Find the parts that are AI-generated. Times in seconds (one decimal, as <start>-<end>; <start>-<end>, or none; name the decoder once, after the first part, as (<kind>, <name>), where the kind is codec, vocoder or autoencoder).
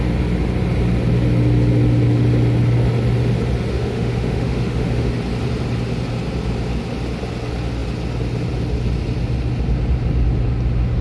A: 3.7-5.1 (autoencoder, DAC-VAE)